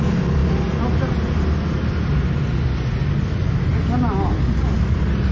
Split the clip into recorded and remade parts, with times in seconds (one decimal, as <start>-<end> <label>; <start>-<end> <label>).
0.0-5.3 recorded